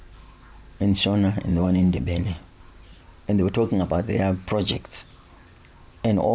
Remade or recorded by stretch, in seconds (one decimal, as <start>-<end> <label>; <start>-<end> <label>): 0.0-6.3 recorded